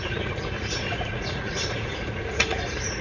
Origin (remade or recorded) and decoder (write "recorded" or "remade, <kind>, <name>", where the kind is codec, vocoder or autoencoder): remade, vocoder, Vocos